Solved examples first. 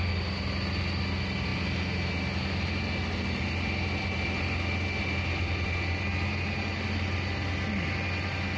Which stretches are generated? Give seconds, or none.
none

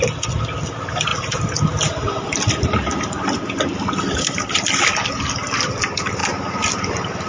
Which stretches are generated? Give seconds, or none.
none

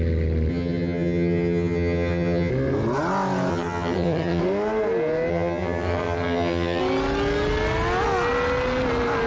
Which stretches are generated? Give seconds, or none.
0.5-2.5; 3.5-4.4; 5.3-6.8